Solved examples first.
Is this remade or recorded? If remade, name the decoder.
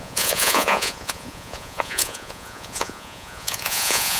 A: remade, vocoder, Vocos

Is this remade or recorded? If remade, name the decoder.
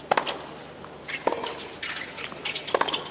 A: recorded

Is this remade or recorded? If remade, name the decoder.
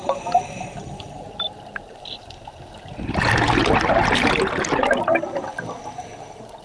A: recorded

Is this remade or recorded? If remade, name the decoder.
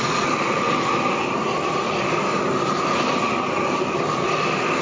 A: recorded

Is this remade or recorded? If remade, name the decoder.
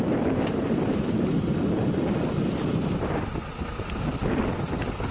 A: recorded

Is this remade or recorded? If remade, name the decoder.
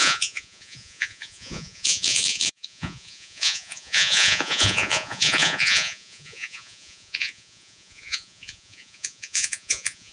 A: remade, vocoder, Vocos